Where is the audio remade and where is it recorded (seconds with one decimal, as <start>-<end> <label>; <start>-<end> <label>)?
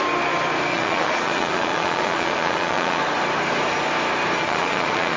0.0-0.7 recorded; 0.7-3.0 remade; 3.0-4.4 recorded; 4.4-5.2 remade